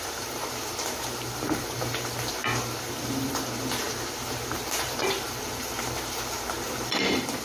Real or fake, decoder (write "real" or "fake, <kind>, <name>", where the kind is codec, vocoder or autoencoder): fake, vocoder, BigVGAN v2